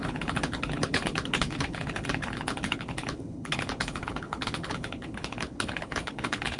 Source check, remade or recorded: remade